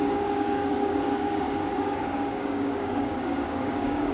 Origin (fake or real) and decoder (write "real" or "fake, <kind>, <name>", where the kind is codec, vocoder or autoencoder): fake, codec, DAC